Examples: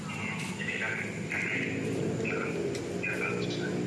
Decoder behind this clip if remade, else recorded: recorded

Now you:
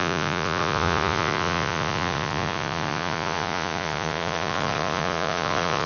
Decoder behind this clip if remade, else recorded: remade, vocoder, Vocos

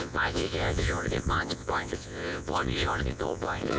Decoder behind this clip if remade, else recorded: remade, vocoder, Vocos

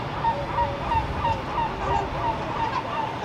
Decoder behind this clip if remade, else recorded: recorded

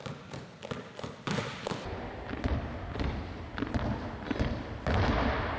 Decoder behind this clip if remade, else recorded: recorded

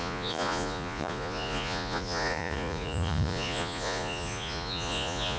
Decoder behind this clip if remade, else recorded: remade, vocoder, Vocos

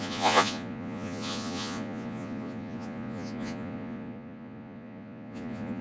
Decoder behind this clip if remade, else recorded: remade, vocoder, Vocos